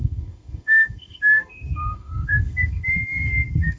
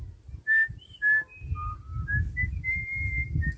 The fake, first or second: first